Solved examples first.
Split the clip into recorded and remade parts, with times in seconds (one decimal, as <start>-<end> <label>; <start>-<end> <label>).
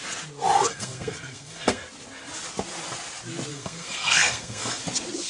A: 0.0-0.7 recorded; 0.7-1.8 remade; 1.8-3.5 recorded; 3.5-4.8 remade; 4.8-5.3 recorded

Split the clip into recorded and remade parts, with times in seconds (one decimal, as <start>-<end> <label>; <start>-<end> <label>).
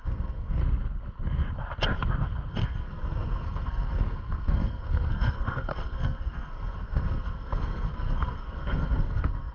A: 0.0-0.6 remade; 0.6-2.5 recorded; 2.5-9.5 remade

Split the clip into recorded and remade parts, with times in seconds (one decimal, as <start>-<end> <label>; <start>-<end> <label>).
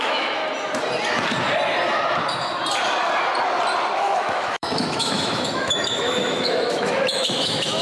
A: 0.0-0.4 remade; 0.4-4.0 recorded; 4.0-7.8 remade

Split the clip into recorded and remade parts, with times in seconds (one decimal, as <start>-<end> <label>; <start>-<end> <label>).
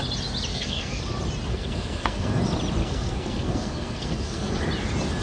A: 0.0-0.5 recorded; 0.5-1.0 remade; 1.0-1.5 recorded; 1.5-2.4 remade; 2.4-2.8 recorded; 2.8-4.6 remade; 4.6-5.2 recorded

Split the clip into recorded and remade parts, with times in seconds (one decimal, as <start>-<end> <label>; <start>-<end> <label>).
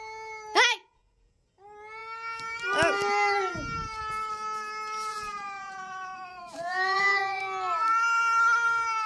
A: 0.0-0.7 recorded; 0.7-1.5 remade; 1.5-5.1 recorded; 5.1-7.4 remade; 7.4-9.1 recorded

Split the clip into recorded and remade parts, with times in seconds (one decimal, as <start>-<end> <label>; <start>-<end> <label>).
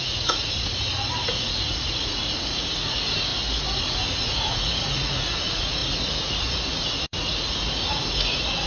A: 0.0-3.3 remade; 3.3-3.8 recorded; 3.8-8.7 remade